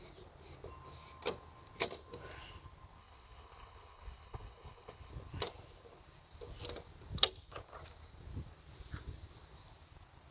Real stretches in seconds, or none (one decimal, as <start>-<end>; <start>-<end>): 0.0-3.0; 5.1-10.3